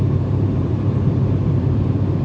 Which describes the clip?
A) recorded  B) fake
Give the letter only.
B